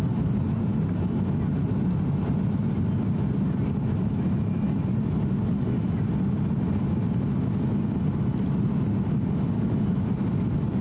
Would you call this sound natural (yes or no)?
yes